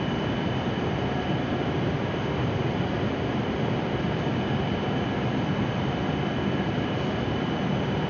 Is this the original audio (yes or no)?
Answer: no